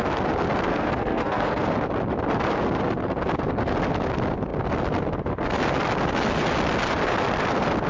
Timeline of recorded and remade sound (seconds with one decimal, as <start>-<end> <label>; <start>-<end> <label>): 0.0-0.7 recorded; 0.7-1.6 remade; 1.6-7.9 recorded